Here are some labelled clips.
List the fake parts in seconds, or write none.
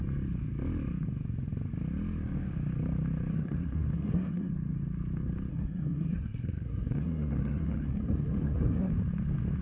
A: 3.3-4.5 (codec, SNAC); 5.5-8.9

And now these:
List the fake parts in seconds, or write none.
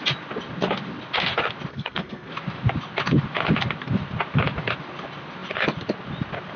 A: 1.7-2.3 (codec, SNAC)